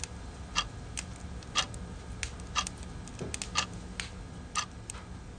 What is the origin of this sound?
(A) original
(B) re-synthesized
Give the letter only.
A